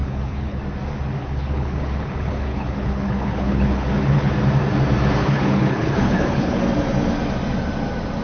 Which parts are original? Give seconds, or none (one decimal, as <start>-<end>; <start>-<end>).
0.6-1.2; 4.3-5.2; 6.6-8.2